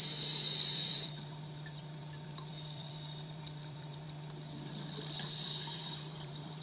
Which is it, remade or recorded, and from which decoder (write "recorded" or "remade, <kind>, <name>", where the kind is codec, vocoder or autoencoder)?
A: remade, vocoder, BigVGAN v2